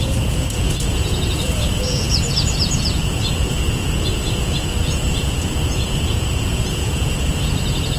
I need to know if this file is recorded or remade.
remade